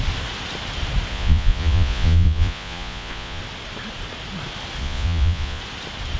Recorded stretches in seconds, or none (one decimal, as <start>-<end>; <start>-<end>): 0.0-1.1; 3.4-4.8; 5.6-6.2